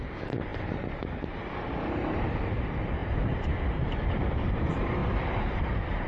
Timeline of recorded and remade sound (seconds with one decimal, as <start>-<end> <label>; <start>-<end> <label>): 0.0-6.1 remade

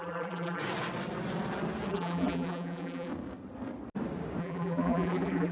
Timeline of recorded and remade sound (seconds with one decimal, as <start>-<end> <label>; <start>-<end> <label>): 0.0-0.6 remade; 0.6-1.9 recorded; 1.9-3.1 remade; 3.1-4.4 recorded; 4.4-5.5 remade